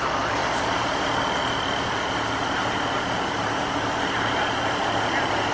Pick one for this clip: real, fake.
real